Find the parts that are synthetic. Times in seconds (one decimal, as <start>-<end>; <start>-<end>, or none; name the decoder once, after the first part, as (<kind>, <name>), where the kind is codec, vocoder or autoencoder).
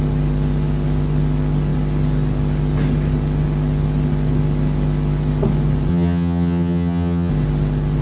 5.9-7.3 (vocoder, HiFi-GAN)